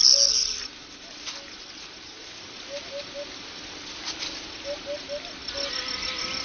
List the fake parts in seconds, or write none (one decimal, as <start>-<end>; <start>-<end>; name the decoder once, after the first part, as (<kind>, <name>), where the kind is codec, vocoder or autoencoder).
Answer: none